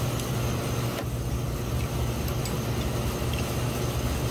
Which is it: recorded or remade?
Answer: recorded